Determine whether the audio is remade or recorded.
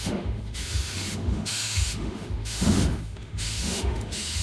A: remade